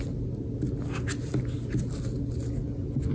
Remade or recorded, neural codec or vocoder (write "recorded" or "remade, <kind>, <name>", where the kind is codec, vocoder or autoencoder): recorded